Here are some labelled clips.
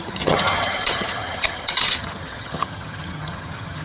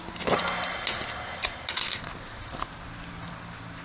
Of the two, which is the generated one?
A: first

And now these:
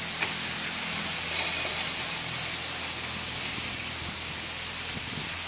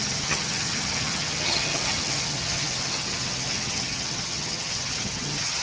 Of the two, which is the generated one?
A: second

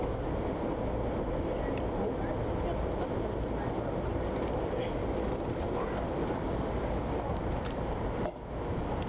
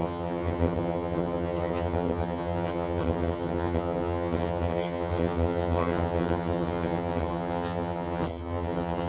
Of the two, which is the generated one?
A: second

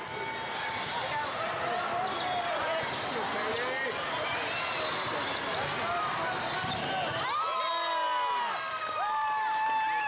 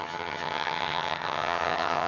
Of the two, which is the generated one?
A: second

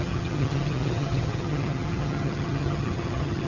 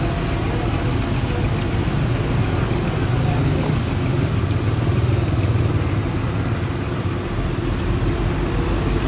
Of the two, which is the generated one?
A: first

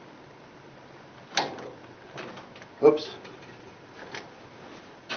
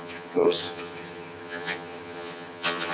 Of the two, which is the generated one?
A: second